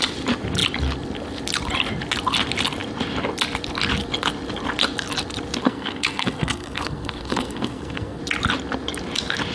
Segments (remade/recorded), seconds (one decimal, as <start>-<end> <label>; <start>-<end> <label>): 0.0-5.6 recorded; 5.6-8.2 remade; 8.2-9.5 recorded